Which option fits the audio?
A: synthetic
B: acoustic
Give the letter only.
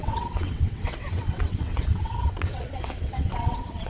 A